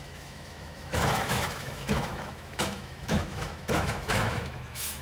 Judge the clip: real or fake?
fake